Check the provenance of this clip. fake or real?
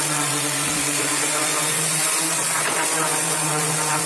fake